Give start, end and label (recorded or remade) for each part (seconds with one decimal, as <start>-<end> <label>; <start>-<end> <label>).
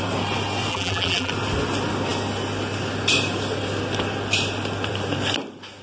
0.0-0.7 recorded; 0.7-1.3 remade; 1.3-5.8 recorded